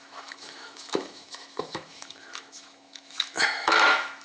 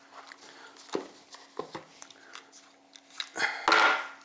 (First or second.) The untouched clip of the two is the second